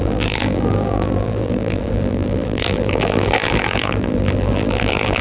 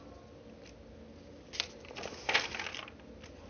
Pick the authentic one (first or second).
second